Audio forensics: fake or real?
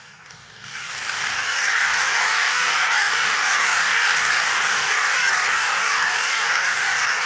fake